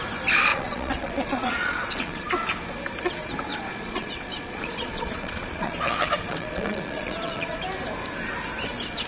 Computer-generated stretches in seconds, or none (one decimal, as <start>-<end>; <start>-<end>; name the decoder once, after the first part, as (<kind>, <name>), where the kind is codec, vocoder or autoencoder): 0.5-2.3 (vocoder, Vocos); 3.5-7.6